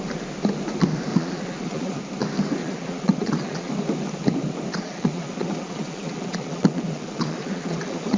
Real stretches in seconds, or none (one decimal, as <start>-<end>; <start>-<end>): 0.0-1.1; 2.0-2.6; 3.7-4.7

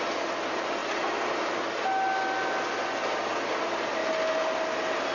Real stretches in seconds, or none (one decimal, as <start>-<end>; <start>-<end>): 0.0-5.1

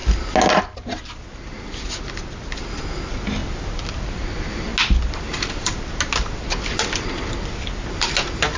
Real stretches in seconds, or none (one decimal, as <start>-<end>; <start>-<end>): 0.0-8.6

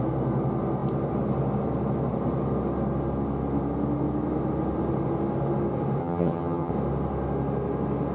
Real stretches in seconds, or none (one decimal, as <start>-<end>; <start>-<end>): 0.0-6.0; 6.7-8.1

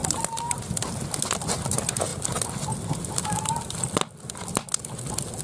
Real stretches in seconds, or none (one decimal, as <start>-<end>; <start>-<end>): 0.0-5.4